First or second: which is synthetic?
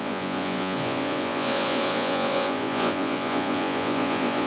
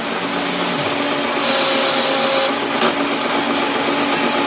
first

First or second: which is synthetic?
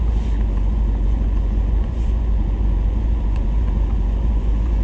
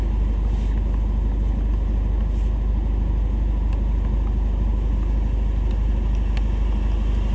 first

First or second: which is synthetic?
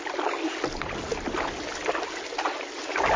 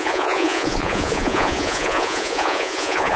second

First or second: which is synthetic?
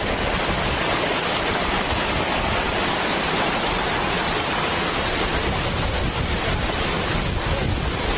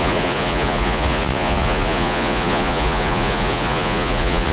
second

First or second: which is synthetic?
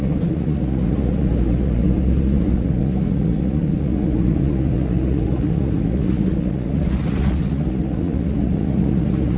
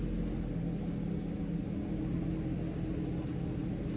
first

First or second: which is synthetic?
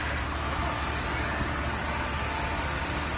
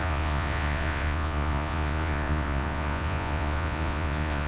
second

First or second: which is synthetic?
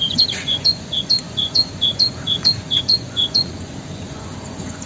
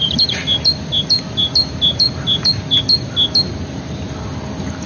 first